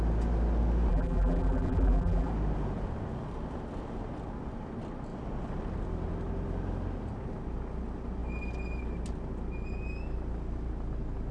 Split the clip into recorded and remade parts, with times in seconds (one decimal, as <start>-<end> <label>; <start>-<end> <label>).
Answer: 0.0-0.9 recorded; 0.9-2.3 remade; 2.3-11.3 recorded